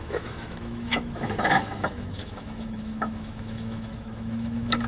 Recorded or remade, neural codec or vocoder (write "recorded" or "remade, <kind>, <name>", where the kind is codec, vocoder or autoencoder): remade, autoencoder, DAC-VAE